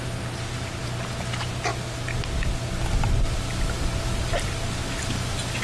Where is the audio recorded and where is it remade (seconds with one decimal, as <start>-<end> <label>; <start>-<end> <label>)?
0.0-5.6 recorded